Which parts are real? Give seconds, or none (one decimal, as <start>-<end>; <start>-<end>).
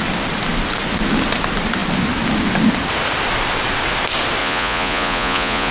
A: 0.0-4.4